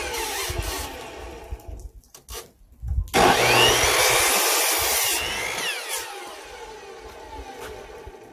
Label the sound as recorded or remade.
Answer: recorded